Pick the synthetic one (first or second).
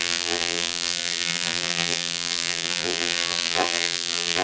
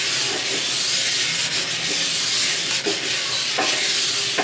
first